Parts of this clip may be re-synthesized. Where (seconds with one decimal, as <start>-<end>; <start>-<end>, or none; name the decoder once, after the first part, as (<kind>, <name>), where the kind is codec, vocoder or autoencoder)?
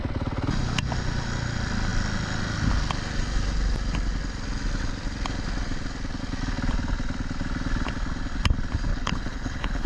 8.9-9.9 (codec, HILCodec)